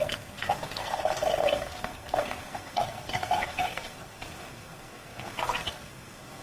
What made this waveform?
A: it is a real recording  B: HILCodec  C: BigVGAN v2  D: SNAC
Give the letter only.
D